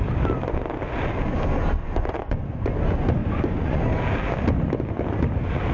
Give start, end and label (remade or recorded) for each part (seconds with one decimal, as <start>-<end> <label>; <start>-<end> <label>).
0.0-1.8 recorded; 1.8-2.7 remade; 2.7-3.2 recorded; 3.2-3.8 remade; 3.8-5.7 recorded